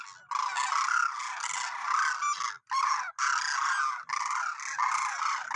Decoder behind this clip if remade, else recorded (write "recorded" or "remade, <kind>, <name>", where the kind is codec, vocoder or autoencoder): recorded